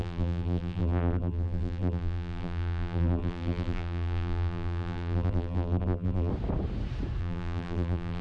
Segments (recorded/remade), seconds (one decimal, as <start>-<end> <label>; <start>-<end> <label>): 0.0-6.3 remade; 6.3-7.2 recorded; 7.2-8.2 remade